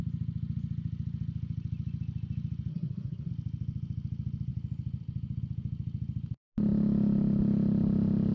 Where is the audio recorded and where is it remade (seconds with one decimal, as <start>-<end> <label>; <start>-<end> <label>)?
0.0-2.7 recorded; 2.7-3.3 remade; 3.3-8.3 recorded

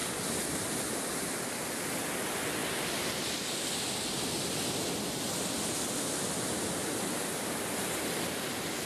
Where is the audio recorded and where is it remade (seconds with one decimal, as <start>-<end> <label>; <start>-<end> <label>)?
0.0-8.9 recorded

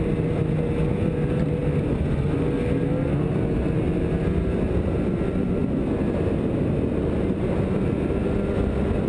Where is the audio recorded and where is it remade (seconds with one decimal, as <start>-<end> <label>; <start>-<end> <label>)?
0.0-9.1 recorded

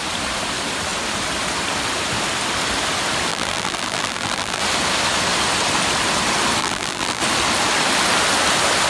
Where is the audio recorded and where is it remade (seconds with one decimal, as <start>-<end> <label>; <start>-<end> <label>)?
0.0-3.3 recorded; 3.3-4.6 remade; 4.6-6.6 recorded; 6.6-7.2 remade; 7.2-8.9 recorded

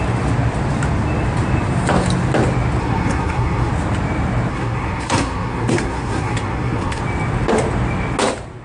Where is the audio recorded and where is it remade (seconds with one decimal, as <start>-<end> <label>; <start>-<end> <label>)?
0.0-2.8 recorded; 2.8-3.7 remade; 3.7-4.5 recorded; 4.5-7.0 remade; 7.0-8.6 recorded